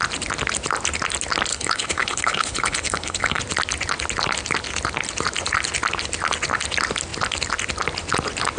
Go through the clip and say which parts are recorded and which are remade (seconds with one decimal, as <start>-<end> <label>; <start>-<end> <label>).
0.0-1.5 recorded; 1.5-3.4 remade; 3.4-8.6 recorded